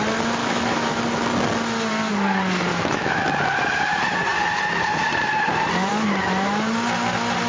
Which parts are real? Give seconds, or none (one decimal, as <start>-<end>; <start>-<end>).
0.0-0.4; 1.0-2.7; 3.2-7.5

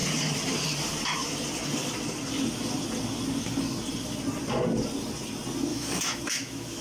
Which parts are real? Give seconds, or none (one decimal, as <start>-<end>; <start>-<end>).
0.0-5.7

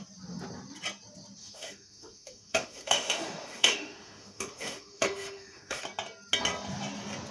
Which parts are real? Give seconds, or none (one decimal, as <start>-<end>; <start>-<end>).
0.0-1.4; 5.8-7.3

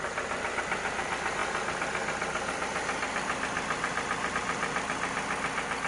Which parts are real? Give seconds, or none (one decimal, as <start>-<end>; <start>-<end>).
0.0-5.9

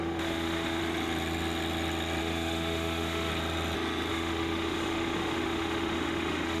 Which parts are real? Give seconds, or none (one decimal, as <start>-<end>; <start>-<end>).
0.8-2.2; 3.3-4.1